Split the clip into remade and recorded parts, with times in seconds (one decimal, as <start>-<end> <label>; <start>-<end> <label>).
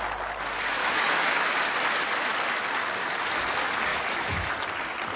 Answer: 0.0-0.8 recorded; 0.8-1.6 remade; 1.6-3.9 recorded; 3.9-4.5 remade; 4.5-5.2 recorded